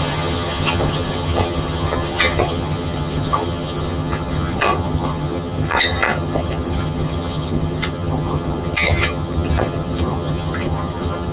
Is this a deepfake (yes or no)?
yes